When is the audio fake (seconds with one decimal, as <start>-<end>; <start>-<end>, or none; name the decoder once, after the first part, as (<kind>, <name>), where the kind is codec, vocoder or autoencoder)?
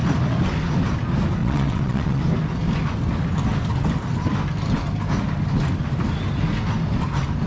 1.4-2.2 (vocoder, WaveNeXt)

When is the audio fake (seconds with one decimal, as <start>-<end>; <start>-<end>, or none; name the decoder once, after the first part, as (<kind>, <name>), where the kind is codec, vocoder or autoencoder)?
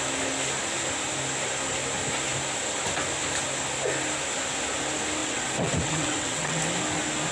5.2-6.6 (vocoder, WaveNeXt)